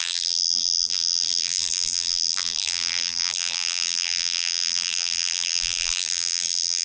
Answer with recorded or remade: remade